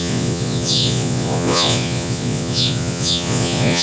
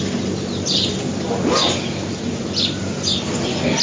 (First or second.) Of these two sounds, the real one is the second